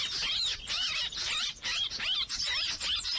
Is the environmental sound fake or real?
real